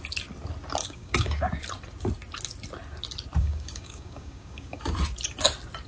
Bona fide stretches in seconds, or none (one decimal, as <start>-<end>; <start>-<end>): 0.0-0.8; 1.5-3.4; 4.8-5.9